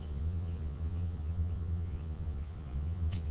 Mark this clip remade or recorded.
remade